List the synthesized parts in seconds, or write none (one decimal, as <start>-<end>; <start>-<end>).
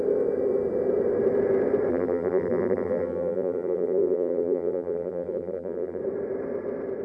1.9-6.0